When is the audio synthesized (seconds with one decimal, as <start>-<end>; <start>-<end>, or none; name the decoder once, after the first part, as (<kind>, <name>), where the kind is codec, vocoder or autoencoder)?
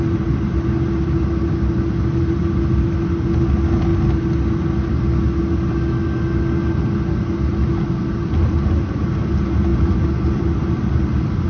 none